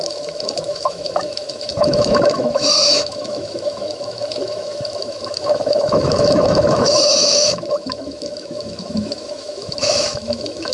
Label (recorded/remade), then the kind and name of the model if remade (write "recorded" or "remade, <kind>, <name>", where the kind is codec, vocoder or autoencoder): remade, autoencoder, DAC-VAE